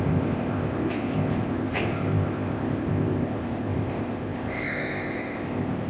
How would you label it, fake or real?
fake